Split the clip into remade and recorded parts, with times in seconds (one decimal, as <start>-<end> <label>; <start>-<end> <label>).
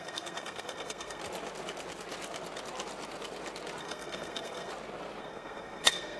0.0-1.2 remade; 1.2-3.8 recorded; 3.8-4.7 remade; 4.7-5.2 recorded; 5.2-6.2 remade